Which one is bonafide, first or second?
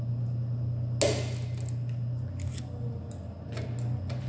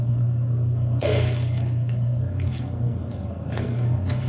first